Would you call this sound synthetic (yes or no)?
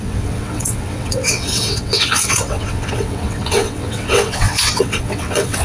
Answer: yes